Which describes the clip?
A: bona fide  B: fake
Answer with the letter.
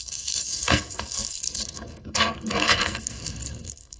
B